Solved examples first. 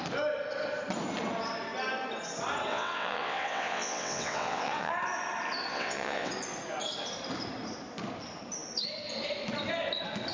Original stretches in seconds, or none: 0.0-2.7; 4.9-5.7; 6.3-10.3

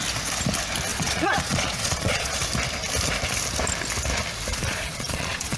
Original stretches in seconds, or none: 0.0-0.9; 2.4-4.5